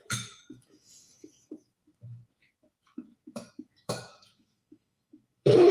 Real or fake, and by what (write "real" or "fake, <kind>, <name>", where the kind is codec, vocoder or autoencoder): fake, autoencoder, DAC-VAE